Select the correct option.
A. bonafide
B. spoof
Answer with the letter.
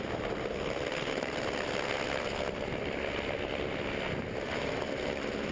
A